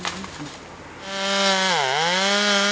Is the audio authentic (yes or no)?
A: yes